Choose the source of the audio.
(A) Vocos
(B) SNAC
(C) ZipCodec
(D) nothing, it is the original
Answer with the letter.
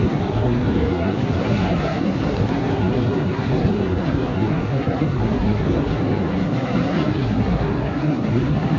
B